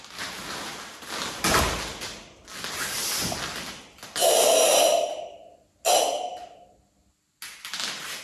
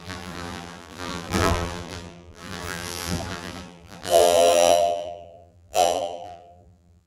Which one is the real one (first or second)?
first